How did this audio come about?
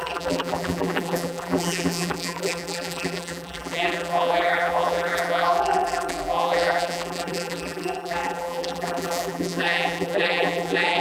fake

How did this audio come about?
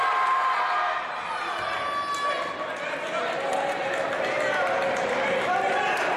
real